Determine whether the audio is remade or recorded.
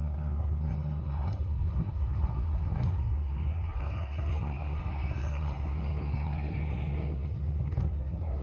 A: remade